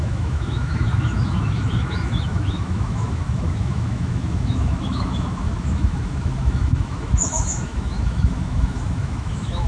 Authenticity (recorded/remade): remade